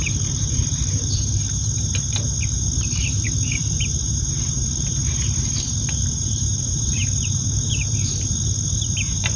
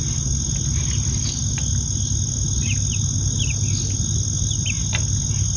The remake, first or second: first